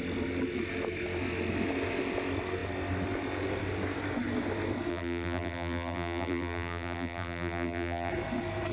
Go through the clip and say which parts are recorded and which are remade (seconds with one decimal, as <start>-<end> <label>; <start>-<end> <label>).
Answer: 0.0-4.9 recorded; 4.9-8.1 remade; 8.1-8.7 recorded